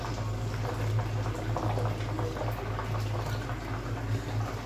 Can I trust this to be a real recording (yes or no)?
yes